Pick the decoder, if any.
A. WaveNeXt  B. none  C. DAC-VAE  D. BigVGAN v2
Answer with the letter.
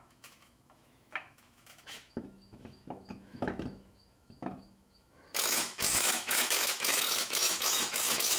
C